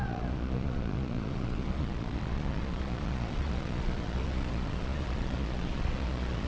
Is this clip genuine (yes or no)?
no